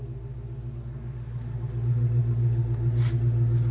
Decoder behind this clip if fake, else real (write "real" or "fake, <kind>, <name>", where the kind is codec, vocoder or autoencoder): real